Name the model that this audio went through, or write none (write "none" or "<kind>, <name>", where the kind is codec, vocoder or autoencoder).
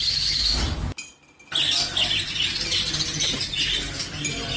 none